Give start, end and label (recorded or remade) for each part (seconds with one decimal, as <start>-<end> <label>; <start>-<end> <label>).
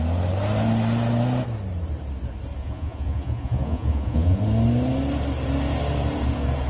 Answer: 0.0-2.6 recorded; 2.6-4.4 remade; 4.4-6.7 recorded